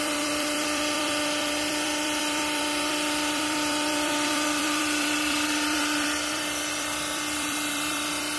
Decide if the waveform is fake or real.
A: fake